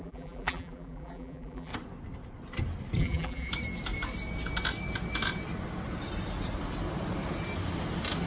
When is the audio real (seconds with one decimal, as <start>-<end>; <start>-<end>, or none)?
1.7-3.0; 3.5-8.3

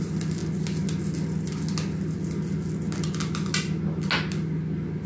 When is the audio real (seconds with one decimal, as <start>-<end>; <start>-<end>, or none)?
0.0-5.1

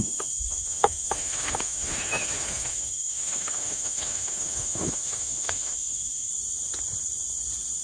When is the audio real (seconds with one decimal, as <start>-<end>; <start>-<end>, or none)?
6.3-7.8

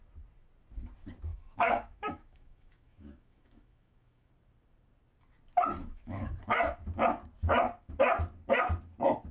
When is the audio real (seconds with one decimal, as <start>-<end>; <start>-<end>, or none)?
0.0-1.3; 4.3-5.8; 6.4-9.3

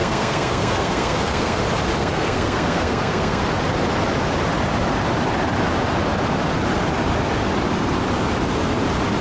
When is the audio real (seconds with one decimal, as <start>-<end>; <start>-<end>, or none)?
1.6-2.0; 3.4-9.2

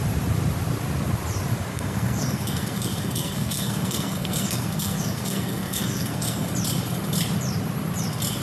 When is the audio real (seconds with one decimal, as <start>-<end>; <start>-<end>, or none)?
0.0-1.7; 6.5-8.4

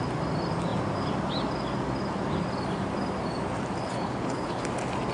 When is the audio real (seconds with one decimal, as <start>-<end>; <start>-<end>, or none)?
0.0-3.8; 4.6-5.1